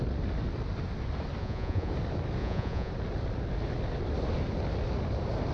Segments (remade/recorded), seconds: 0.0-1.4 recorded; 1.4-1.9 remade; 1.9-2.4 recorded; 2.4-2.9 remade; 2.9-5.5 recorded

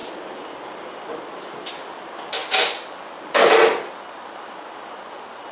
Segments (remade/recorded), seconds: 0.0-2.4 recorded; 2.4-2.9 remade; 2.9-5.5 recorded